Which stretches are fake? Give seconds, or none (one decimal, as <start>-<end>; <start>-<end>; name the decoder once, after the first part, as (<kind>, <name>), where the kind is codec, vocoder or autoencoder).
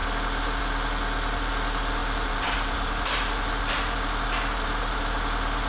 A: 2.0-5.7 (vocoder, BigVGAN v2)